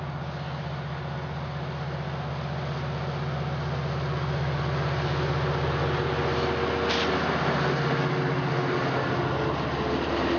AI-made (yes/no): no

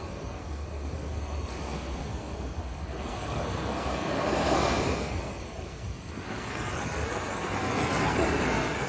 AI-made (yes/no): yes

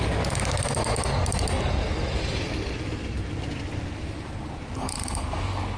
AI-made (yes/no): no